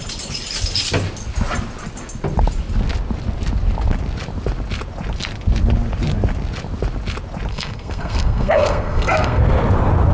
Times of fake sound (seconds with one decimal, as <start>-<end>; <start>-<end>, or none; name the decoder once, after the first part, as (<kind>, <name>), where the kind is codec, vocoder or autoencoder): 7.5-9.4 (codec, SNAC)